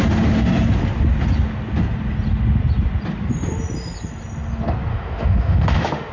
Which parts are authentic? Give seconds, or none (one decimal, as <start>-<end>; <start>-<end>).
0.0-4.9